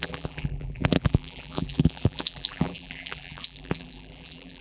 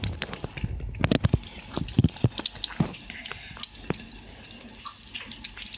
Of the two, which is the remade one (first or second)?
first